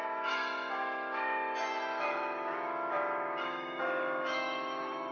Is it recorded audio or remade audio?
remade